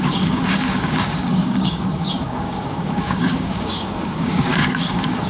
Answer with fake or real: fake